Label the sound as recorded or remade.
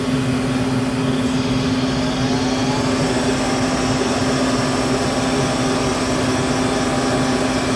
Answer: recorded